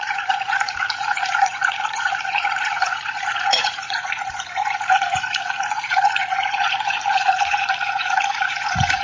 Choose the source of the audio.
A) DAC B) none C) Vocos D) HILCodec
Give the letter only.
C